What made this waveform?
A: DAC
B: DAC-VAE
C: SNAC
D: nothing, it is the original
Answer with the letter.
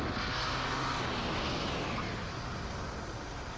D